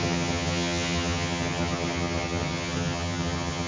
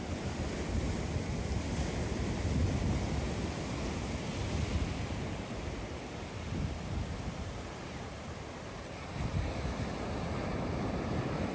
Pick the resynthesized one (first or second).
first